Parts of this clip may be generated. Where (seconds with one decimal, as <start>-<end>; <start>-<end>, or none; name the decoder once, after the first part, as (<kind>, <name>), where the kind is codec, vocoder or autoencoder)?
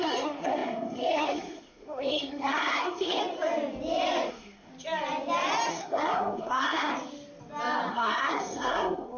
0.0-3.2 (codec, SNAC); 4.3-4.7; 5.7-6.9; 7.9-9.2